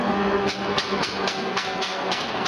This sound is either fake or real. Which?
fake